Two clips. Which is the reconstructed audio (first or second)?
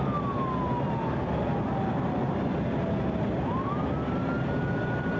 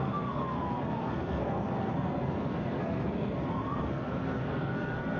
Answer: second